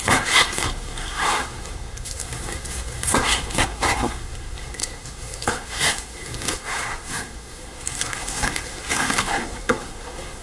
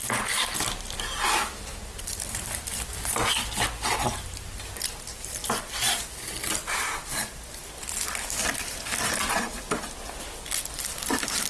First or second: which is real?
second